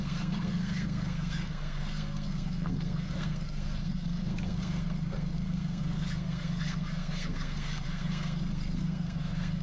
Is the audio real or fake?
fake